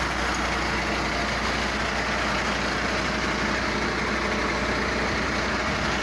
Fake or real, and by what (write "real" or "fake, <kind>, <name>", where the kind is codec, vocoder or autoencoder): real